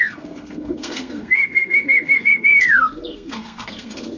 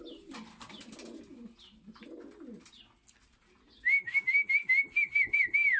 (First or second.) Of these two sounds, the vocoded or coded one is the first